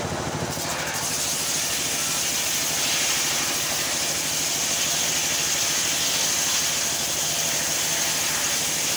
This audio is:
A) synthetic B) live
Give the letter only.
B